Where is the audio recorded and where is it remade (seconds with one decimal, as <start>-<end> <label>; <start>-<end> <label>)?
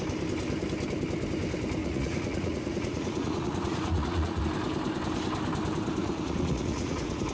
0.0-1.8 recorded; 1.8-4.4 remade; 4.4-6.0 recorded; 6.0-7.3 remade